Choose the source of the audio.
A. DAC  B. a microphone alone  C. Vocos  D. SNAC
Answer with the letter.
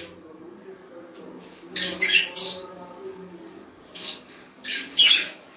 A